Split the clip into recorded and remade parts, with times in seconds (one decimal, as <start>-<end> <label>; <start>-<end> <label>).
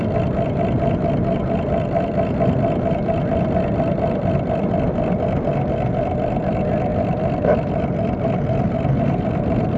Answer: 0.0-6.9 recorded; 6.9-9.8 remade